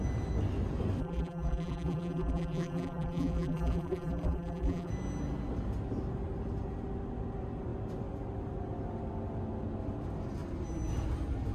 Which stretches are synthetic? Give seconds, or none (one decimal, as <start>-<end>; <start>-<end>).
1.0-4.9